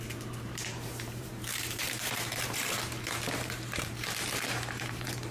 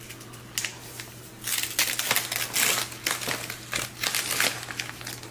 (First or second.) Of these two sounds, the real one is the second